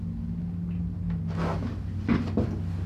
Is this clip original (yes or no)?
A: yes